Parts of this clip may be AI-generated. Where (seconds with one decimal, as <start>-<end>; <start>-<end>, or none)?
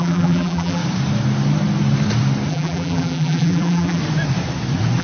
0.0-0.8; 2.5-4.0